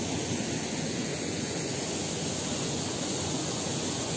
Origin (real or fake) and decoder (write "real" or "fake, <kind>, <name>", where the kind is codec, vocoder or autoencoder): fake, vocoder, Vocos